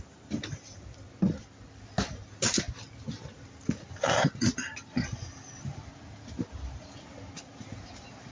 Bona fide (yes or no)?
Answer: yes